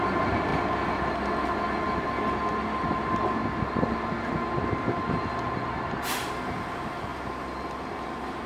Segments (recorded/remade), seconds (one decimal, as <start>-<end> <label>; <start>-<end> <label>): 0.0-8.5 recorded